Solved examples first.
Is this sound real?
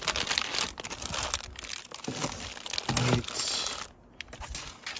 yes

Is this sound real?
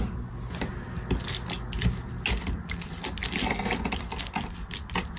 yes